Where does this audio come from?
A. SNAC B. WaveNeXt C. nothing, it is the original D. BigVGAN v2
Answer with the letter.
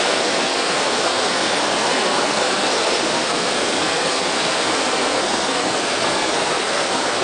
A